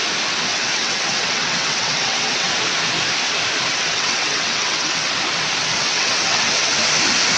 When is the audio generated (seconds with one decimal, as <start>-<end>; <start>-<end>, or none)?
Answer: 0.5-2.5; 3.7-5.1; 5.6-6.9